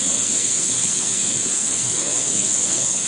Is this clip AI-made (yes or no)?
yes